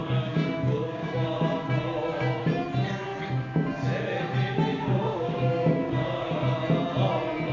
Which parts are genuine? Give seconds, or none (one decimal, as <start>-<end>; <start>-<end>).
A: 2.4-4.7; 6.3-7.5